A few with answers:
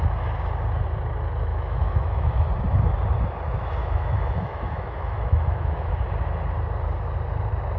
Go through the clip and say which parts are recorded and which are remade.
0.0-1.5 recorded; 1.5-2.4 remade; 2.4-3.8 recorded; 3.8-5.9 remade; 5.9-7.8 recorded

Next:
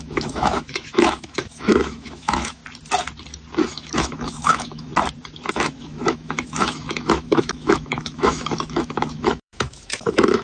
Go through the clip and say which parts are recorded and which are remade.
0.0-2.6 remade; 2.6-3.7 recorded; 3.7-4.9 remade; 4.9-5.5 recorded; 5.5-10.4 remade

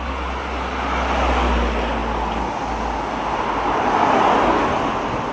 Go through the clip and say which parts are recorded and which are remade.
0.0-5.3 recorded